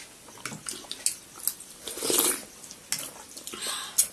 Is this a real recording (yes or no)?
yes